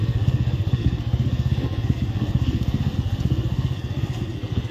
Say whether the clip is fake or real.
fake